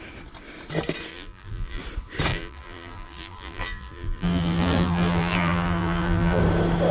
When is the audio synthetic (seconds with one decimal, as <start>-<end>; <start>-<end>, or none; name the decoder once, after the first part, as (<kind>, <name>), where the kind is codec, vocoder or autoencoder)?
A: 1.1-1.8 (vocoder, BigVGAN v2); 2.3-6.4